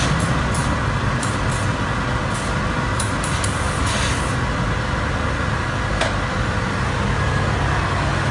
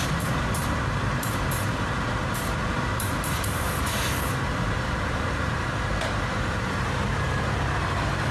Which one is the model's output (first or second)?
second